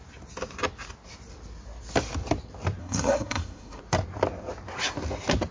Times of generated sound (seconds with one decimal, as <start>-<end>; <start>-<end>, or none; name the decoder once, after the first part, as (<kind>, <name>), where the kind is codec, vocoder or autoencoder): 2.8-3.8 (codec, SNAC)